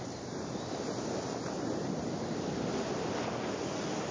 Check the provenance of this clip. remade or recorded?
recorded